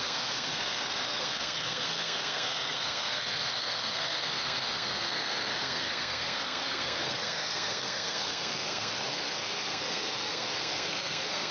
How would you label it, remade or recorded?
remade